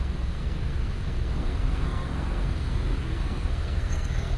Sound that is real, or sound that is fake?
fake